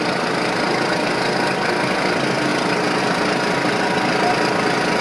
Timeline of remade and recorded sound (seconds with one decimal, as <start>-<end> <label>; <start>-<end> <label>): 0.0-5.0 recorded